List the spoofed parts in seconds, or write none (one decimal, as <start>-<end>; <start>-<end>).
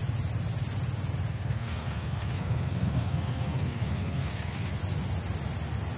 1.3-4.8